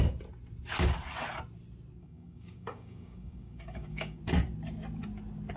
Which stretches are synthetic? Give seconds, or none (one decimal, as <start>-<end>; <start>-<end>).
2.0-4.2